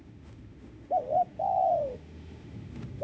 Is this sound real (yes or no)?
no